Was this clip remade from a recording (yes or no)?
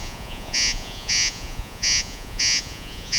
yes